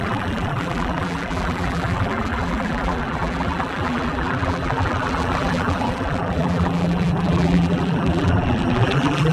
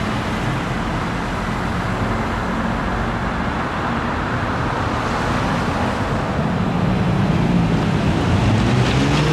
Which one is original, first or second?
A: second